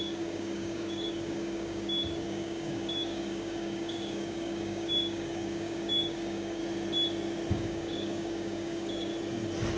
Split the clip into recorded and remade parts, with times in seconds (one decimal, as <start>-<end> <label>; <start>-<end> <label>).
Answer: 0.0-6.6 remade; 6.6-7.5 recorded; 7.5-9.1 remade; 9.1-9.8 recorded